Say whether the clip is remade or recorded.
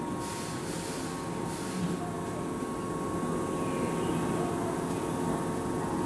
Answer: recorded